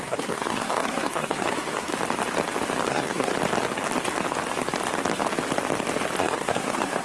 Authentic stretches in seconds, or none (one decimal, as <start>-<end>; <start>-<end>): 1.9-2.9; 3.3-6.2